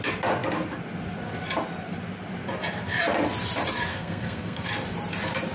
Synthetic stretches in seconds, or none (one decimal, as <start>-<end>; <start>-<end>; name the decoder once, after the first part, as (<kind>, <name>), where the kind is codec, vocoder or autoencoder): 3.9-4.7 (codec, SNAC)